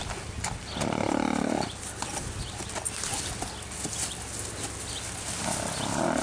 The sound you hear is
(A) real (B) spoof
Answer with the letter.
A